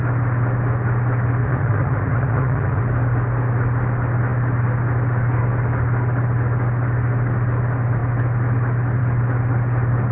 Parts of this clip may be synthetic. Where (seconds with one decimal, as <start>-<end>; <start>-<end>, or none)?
1.4-2.8